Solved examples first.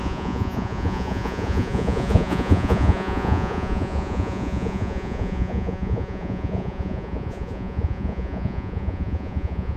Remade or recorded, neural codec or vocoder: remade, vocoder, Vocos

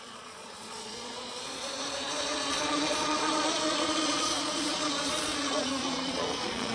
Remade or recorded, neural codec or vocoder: remade, vocoder, Vocos